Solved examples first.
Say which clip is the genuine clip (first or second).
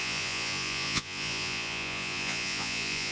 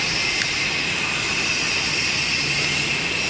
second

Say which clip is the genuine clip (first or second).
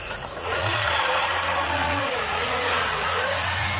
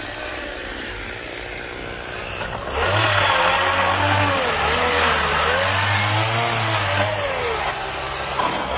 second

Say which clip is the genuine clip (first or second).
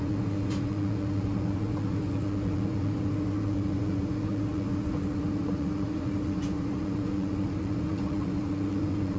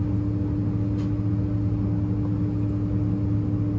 second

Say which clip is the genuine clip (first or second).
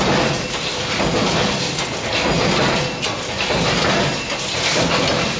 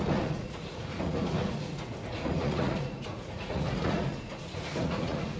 first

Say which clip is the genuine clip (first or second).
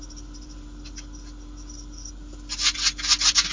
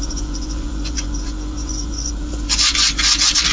first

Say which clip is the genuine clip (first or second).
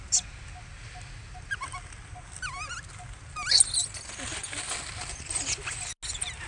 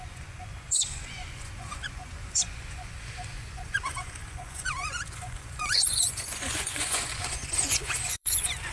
first